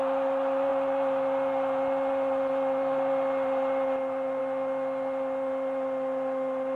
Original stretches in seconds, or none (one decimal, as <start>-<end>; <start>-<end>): 0.0-6.8